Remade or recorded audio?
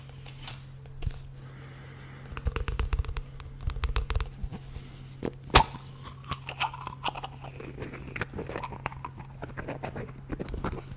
recorded